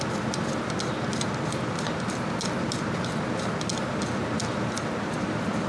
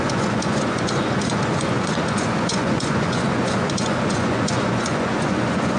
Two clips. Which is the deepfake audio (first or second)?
second